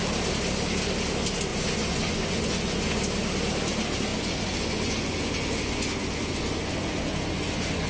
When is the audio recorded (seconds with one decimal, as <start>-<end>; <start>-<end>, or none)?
0.0-1.5; 3.0-4.1